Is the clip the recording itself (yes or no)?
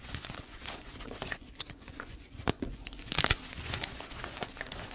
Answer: no